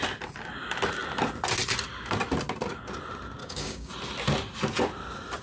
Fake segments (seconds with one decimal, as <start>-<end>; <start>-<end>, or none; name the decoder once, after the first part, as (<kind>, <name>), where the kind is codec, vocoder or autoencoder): 3.4-3.9 (codec, DAC)